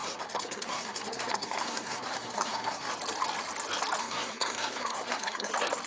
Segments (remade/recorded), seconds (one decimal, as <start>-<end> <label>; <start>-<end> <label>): 0.0-2.9 remade; 2.9-4.0 recorded; 4.0-5.5 remade; 5.5-5.9 recorded